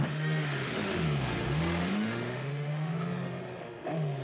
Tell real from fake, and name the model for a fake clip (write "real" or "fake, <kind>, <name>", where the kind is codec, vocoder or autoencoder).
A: fake, autoencoder, DAC-VAE